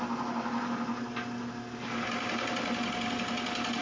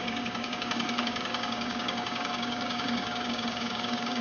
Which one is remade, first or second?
second